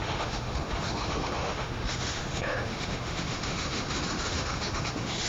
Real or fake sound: fake